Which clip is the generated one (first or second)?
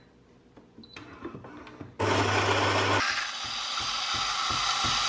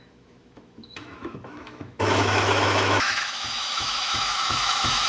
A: second